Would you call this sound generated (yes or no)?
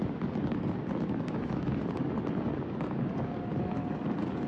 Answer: yes